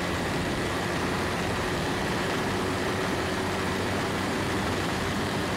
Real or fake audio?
fake